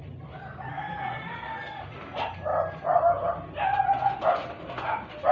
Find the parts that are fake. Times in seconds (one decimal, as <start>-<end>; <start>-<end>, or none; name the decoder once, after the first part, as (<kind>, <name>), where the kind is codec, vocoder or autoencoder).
0.0-2.5 (vocoder, BigVGAN v2); 3.9-5.3